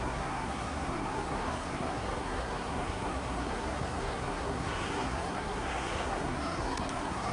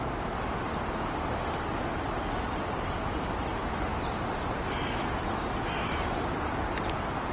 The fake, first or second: first